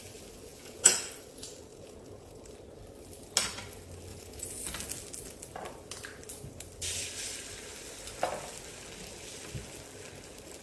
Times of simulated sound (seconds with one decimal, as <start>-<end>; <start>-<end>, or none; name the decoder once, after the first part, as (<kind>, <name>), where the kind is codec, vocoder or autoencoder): 0.5-1.1 (vocoder, Vocos); 1.7-2.4; 4.1-4.6